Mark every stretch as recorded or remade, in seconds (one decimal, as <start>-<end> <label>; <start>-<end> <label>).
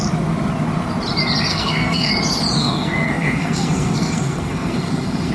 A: 0.0-1.5 recorded; 1.5-2.1 remade; 2.1-2.6 recorded; 2.6-5.3 remade